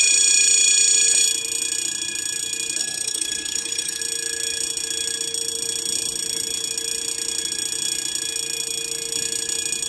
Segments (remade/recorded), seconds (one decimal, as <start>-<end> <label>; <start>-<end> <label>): 0.0-2.8 recorded; 2.8-4.0 remade; 4.0-9.9 recorded